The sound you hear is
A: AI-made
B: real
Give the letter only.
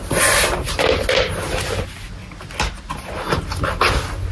B